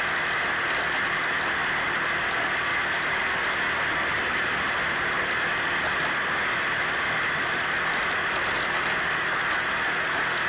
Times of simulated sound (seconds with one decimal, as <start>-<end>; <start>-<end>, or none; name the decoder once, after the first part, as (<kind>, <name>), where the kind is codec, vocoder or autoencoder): none